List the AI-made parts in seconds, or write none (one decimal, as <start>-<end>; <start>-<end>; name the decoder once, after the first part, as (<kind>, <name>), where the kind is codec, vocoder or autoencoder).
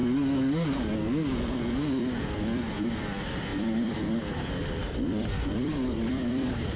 1.7-6.8 (vocoder, BigVGAN v2)